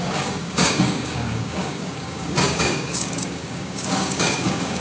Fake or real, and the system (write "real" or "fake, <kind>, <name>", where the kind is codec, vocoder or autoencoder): fake, codec, DAC